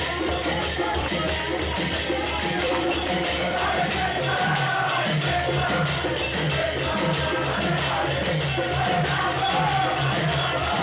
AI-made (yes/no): yes